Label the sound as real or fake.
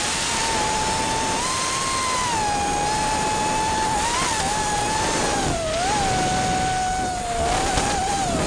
real